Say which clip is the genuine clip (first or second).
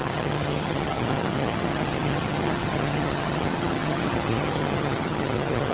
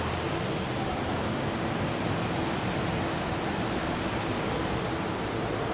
second